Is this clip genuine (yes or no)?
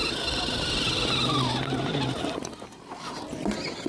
yes